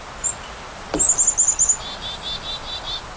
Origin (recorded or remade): recorded